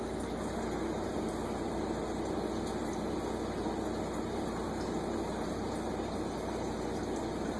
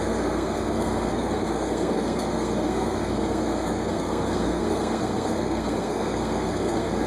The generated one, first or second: second